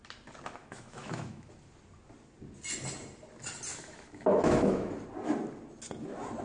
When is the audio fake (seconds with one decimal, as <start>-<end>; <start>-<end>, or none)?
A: 0.6-1.5; 3.7-4.9

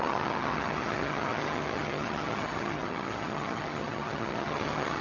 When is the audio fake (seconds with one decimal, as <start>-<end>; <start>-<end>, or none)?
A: 0.0-5.0

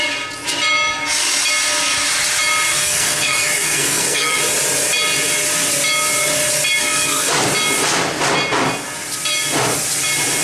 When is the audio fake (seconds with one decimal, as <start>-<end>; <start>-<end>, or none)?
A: 2.7-4.4; 6.8-7.3

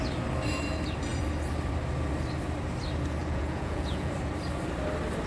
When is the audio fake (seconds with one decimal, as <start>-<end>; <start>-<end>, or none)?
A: 3.2-4.1

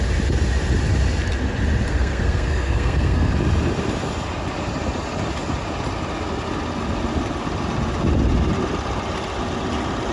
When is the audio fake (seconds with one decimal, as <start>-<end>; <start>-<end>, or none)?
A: 1.9-3.3

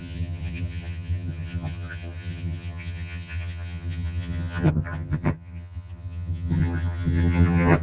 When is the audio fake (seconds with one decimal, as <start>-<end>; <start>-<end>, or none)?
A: 0.0-7.8